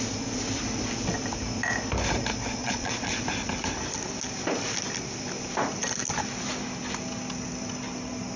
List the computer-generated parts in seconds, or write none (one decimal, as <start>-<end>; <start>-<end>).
2.6-3.2